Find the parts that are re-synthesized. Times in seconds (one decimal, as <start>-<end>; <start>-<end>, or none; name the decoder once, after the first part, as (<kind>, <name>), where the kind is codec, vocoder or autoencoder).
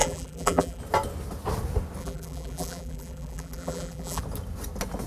0.0-0.8 (vocoder, BigVGAN v2); 2.0-4.2